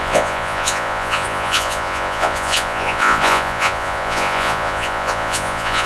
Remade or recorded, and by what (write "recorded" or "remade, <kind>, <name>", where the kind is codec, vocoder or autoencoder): remade, vocoder, Vocos